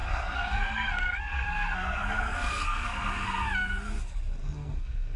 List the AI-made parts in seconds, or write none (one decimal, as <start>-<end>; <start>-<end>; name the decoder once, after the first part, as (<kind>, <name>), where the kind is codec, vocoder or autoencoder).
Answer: 0.0-3.1 (codec, SNAC); 4.4-5.2